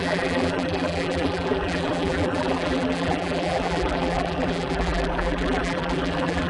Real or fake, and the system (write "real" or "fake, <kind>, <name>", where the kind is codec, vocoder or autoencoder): fake, vocoder, BigVGAN v2